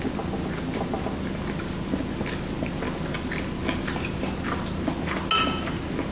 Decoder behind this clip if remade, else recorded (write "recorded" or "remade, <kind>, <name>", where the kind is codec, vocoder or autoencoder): recorded